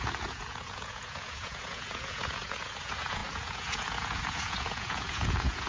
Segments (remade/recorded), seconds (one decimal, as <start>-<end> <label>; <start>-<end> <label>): 0.0-5.7 remade